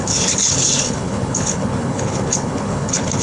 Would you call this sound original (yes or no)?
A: no